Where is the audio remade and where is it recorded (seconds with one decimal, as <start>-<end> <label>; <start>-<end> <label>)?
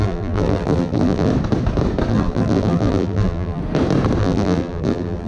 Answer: 0.0-1.3 remade; 1.3-2.1 recorded; 2.1-3.6 remade; 3.6-4.2 recorded; 4.2-5.3 remade